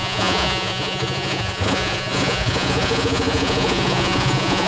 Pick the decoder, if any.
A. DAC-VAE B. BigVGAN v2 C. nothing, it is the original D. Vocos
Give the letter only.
D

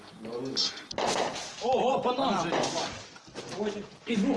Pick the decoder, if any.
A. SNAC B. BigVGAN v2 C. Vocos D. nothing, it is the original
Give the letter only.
D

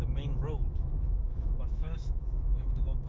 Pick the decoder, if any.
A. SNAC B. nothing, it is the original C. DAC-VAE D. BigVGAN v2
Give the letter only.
C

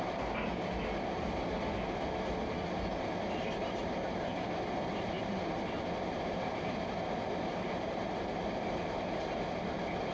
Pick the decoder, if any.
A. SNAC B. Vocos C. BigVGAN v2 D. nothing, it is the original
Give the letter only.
D